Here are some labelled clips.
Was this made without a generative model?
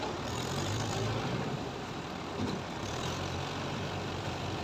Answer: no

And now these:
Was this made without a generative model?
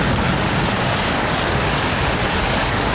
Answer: no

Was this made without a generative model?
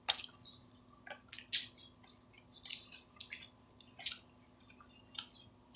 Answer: yes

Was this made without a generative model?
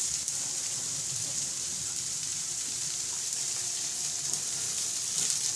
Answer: no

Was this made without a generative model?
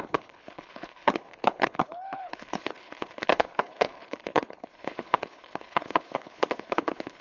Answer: no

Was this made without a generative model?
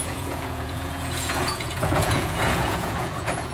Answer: no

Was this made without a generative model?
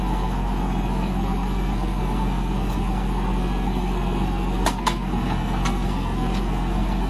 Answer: no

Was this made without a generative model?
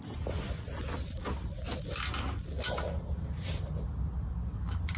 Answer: yes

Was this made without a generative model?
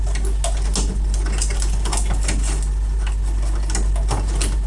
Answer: yes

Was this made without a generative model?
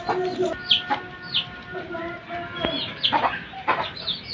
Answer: yes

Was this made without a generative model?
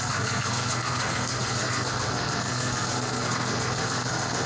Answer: no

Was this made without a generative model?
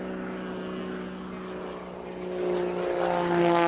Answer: yes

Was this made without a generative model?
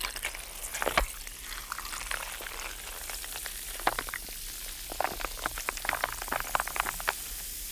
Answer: yes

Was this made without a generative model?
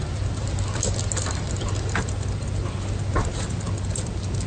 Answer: yes